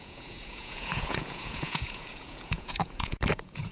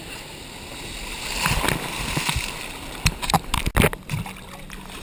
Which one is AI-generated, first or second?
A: first